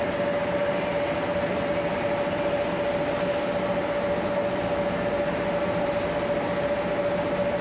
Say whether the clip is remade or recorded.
recorded